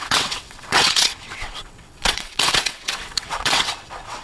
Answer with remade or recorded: remade